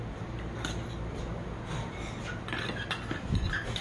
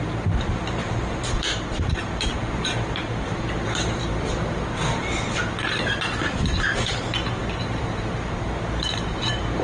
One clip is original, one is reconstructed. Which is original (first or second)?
first